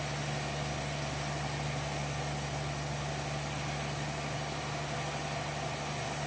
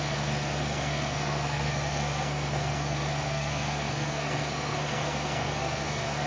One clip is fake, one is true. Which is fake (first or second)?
second